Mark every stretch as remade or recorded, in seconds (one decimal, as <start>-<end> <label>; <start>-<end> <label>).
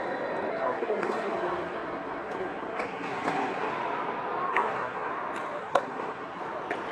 0.0-0.5 recorded; 0.5-3.7 remade; 3.7-4.5 recorded; 4.5-5.1 remade; 5.1-5.6 recorded; 5.6-6.4 remade; 6.4-6.9 recorded